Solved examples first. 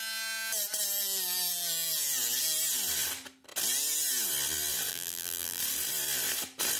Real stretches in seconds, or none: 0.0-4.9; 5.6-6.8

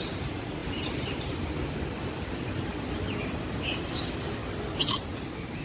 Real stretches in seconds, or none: 4.4-5.6

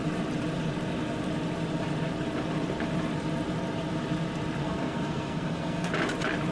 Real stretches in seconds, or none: 0.0-4.6; 5.9-6.5

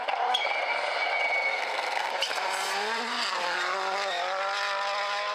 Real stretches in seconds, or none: 0.0-1.5; 2.1-5.3

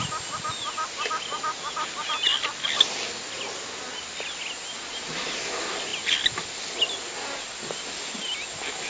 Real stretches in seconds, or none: 0.0-8.9